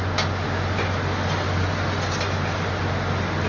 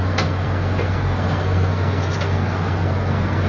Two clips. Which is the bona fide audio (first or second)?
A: first